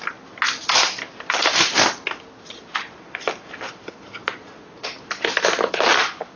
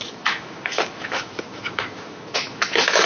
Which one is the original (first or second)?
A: first